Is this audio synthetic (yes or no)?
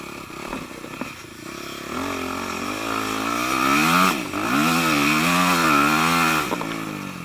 no